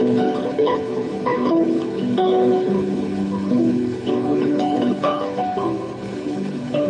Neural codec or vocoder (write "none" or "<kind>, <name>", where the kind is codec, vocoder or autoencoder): codec, HILCodec